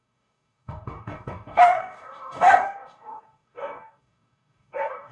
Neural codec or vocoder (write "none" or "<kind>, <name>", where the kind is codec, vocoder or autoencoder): codec, DAC